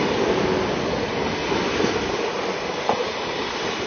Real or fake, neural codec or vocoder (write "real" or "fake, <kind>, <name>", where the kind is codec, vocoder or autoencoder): real